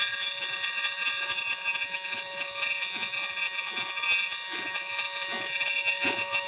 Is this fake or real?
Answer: fake